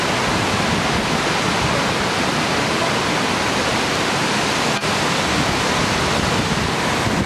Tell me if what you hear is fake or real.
real